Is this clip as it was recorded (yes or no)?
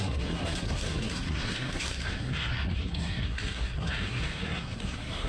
no